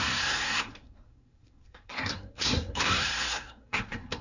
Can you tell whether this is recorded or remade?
remade